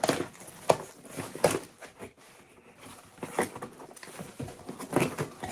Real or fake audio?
real